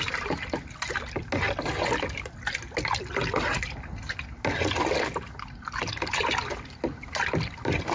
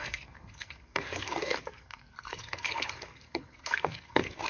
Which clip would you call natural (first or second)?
first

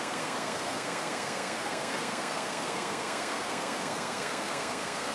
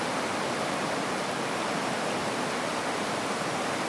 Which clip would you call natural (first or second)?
second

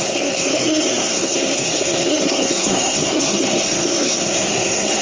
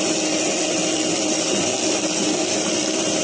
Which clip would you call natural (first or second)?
second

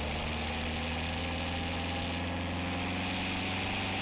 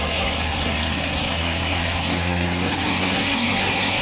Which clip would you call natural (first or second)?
first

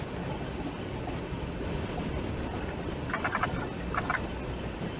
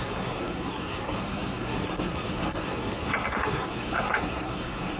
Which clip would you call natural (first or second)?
first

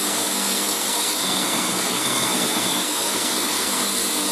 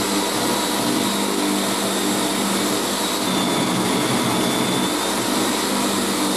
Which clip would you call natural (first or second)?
second